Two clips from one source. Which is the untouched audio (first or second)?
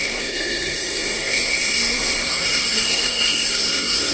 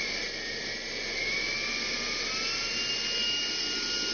second